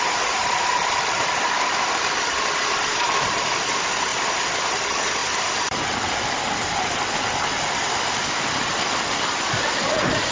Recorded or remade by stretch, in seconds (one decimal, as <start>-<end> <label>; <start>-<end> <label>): 0.0-4.1 remade; 4.1-4.6 recorded; 4.6-5.2 remade; 5.2-8.8 recorded; 8.8-10.3 remade